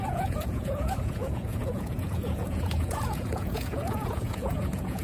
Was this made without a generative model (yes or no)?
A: no